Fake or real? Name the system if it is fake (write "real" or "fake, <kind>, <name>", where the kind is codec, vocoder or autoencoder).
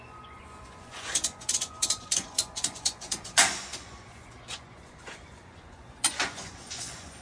fake, vocoder, Vocos